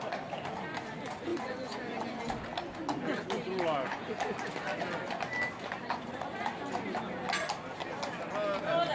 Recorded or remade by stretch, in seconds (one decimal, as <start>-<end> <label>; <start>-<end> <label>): 0.0-1.3 recorded; 1.3-2.2 remade; 2.2-8.9 recorded